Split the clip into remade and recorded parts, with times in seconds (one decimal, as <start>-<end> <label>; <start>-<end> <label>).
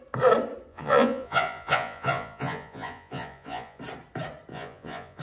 0.0-0.7 recorded; 0.7-3.8 remade; 3.8-4.5 recorded; 4.5-5.2 remade